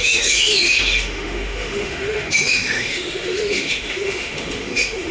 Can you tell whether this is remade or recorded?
remade